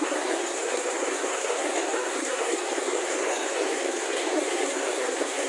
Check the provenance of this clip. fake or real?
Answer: fake